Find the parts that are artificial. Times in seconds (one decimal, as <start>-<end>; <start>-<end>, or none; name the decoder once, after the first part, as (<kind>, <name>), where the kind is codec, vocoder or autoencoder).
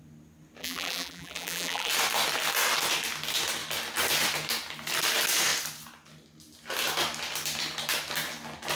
0.6-1.9 (vocoder, BigVGAN v2)